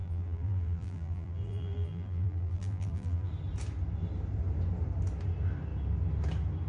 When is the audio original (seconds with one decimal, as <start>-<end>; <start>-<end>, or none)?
3.3-6.7